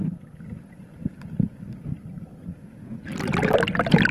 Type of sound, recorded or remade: recorded